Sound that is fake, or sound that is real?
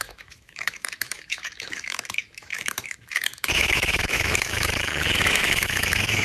fake